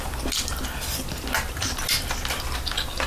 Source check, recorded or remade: recorded